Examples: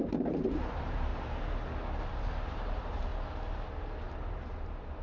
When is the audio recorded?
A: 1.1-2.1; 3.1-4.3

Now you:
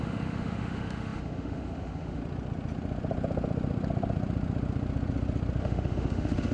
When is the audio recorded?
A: 2.2-5.6

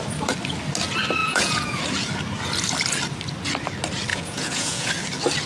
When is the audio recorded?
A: 0.0-1.2; 1.8-4.1; 4.9-5.5

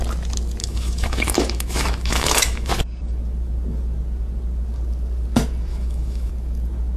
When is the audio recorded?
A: 0.0-0.6; 2.7-5.7; 6.3-7.0

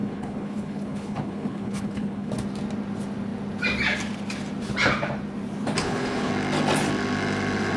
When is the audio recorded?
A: 2.3-5.8; 6.3-7.8

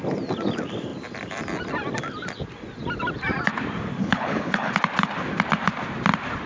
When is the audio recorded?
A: 0.0-4.0; 4.7-6.5

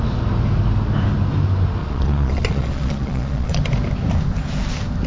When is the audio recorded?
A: 0.0-1.8; 3.6-5.1

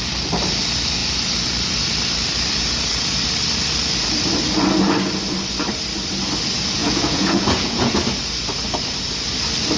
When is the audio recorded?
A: 0.0-6.8; 7.9-9.8